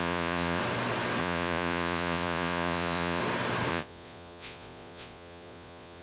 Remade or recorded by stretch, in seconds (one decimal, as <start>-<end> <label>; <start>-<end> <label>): 0.0-0.6 remade; 0.6-1.2 recorded; 1.2-3.2 remade; 3.2-3.7 recorded; 3.7-6.0 remade